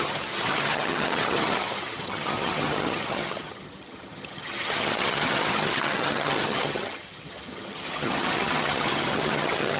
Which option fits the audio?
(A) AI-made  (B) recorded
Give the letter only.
A